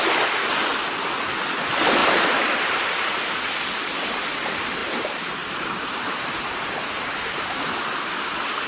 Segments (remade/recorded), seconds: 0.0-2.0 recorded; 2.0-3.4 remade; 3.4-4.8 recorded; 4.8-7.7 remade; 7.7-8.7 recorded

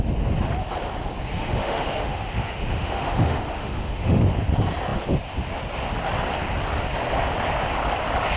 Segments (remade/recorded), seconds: 0.0-1.3 recorded; 1.3-4.2 remade; 4.2-8.4 recorded

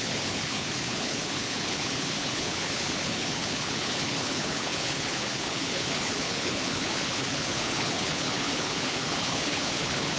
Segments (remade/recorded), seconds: 0.0-10.2 remade

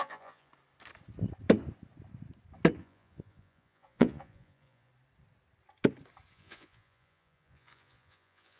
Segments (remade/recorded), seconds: 0.0-0.5 remade; 0.5-2.8 recorded; 2.8-4.9 remade; 4.9-6.3 recorded; 6.3-8.6 remade

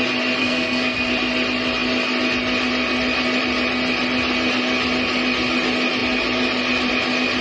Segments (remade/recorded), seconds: 0.0-0.4 recorded; 0.4-1.1 remade; 1.1-7.4 recorded

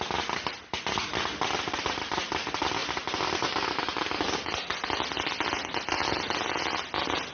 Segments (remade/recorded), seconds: 0.0-7.3 recorded

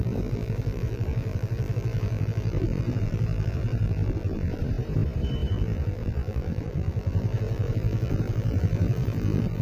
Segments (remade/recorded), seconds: 0.0-4.6 remade; 4.6-5.5 recorded; 5.5-9.6 remade